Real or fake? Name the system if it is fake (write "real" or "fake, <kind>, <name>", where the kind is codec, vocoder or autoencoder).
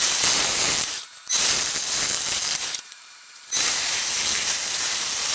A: fake, vocoder, BigVGAN v2